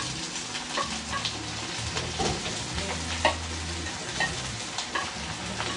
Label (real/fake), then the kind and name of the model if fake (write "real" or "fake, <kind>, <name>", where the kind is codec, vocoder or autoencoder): real